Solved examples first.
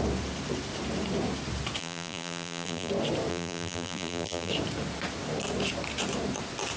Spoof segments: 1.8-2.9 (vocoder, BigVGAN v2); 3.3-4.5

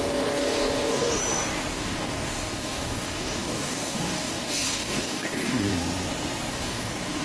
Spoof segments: 0.0-1.2 (codec, DAC); 1.7-5.7; 6.5-7.2

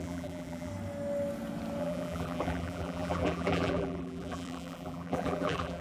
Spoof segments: 0.0-0.7 (vocoder, BigVGAN v2); 1.8-5.8

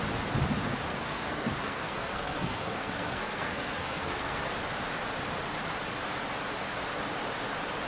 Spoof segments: 0.9-4.4 (codec, SNAC)

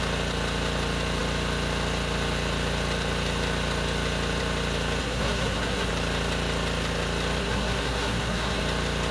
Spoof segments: 5.0-5.9 (codec, SNAC); 7.4-8.6

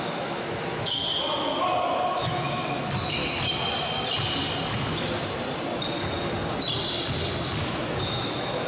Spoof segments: 0.0-1.0 (autoencoder, DAC-VAE); 2.1-3.2; 7.6-8.7

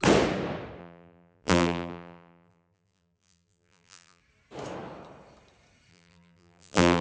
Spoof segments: 0.8-4.2 (vocoder, BigVGAN v2); 5.9-7.0